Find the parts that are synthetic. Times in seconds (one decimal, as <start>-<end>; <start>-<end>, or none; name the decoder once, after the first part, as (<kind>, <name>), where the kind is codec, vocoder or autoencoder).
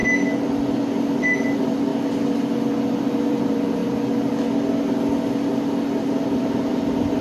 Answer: 1.2-1.9 (vocoder, BigVGAN v2); 3.0-3.8; 6.0-7.2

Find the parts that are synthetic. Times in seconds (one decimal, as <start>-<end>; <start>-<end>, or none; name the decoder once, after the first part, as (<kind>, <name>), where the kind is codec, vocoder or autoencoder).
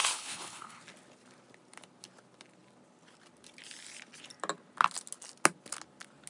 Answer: 0.0-0.8 (codec, HILCodec)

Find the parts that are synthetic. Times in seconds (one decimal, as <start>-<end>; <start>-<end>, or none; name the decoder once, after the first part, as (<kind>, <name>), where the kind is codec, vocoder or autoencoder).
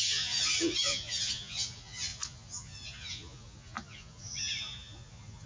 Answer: 0.0-5.5 (vocoder, Vocos)